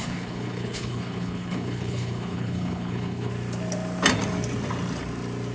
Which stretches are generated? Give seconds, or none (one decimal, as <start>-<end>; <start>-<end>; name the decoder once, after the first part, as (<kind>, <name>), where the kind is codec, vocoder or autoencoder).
0.0-3.3 (codec, HILCodec)